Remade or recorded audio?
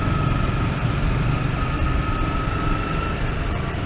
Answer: recorded